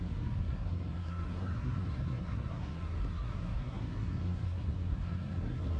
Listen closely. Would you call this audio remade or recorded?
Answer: remade